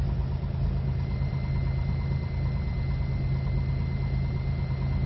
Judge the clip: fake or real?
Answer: real